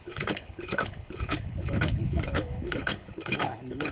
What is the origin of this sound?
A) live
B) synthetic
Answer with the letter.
B